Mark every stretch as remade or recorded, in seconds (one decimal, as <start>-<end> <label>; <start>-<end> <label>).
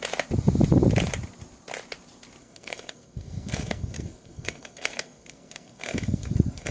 0.0-2.4 recorded; 2.4-6.7 remade